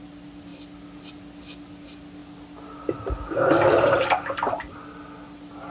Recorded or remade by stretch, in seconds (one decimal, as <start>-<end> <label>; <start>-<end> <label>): 0.0-5.7 recorded